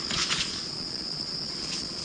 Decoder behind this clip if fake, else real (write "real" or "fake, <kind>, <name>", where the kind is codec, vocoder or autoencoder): fake, vocoder, Vocos